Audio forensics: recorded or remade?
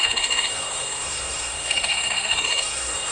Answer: remade